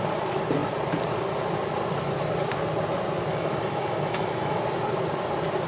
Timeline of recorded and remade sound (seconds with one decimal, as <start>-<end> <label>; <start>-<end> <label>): 0.0-3.3 recorded; 3.3-4.6 remade; 4.6-5.7 recorded